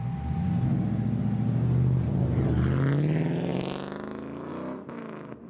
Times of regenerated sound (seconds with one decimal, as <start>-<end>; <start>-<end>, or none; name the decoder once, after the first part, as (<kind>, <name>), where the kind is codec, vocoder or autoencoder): none